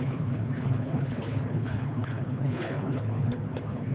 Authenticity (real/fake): fake